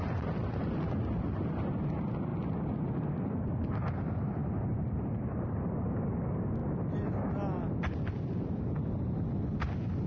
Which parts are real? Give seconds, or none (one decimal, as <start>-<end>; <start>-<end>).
0.0-4.4; 5.6-10.1